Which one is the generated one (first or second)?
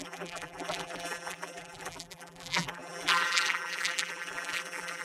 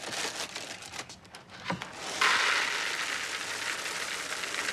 first